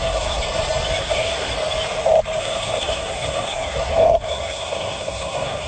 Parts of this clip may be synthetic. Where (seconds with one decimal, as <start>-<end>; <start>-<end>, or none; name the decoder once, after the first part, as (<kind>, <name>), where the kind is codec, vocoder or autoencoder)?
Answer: 0.0-0.4 (codec, SNAC); 1.0-1.5; 2.4-5.7